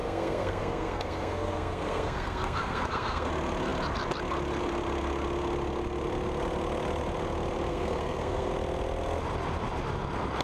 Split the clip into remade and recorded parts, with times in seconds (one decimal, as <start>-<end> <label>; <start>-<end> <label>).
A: 0.0-3.3 remade; 3.3-7.7 recorded; 7.7-8.5 remade; 8.5-10.4 recorded